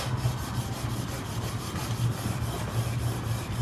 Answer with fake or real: real